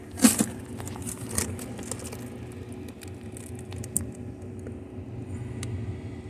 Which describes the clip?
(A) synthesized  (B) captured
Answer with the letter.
B